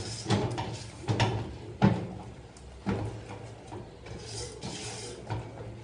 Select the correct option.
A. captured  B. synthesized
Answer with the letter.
A